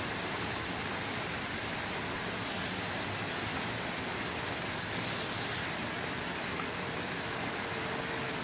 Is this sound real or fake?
real